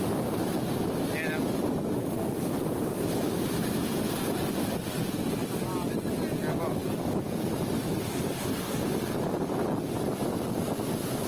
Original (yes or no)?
yes